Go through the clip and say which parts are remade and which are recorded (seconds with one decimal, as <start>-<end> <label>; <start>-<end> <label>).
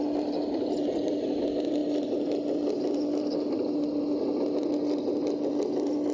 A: 0.0-6.1 recorded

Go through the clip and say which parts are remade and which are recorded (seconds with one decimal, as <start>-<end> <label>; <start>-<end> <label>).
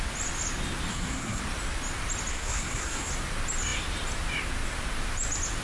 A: 0.0-0.9 recorded; 0.9-1.4 remade; 1.4-2.3 recorded; 2.3-3.1 remade; 3.1-5.6 recorded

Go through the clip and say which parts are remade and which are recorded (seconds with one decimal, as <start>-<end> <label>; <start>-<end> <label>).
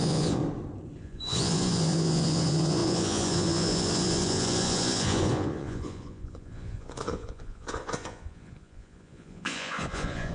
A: 0.0-0.4 remade; 0.4-1.0 recorded; 1.0-10.3 remade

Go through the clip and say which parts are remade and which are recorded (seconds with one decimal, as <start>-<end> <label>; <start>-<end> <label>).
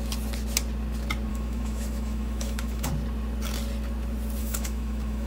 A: 0.0-1.3 recorded; 1.3-2.9 remade; 2.9-4.4 recorded; 4.4-5.3 remade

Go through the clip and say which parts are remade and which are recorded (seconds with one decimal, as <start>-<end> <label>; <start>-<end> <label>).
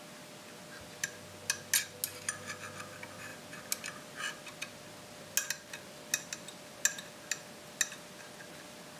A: 0.0-9.0 recorded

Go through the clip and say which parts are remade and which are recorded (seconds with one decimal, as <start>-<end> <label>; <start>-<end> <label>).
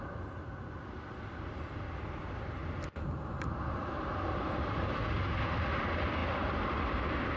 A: 0.0-7.4 recorded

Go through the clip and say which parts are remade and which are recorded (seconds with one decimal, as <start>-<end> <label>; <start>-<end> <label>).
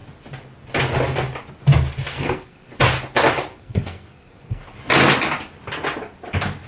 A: 0.0-2.1 recorded; 2.1-2.7 remade; 2.7-3.5 recorded; 3.5-4.6 remade; 4.6-6.7 recorded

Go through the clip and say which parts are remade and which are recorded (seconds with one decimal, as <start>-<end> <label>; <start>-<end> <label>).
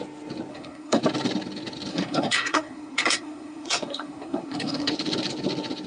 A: 0.0-0.5 recorded; 0.5-1.0 remade; 1.0-1.9 recorded; 1.9-4.9 remade; 4.9-5.9 recorded